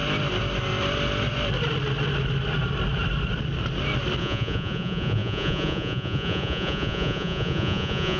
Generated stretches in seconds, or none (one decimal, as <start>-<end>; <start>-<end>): 4.2-8.2